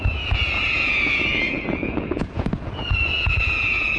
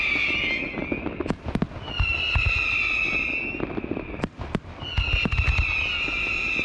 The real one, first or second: second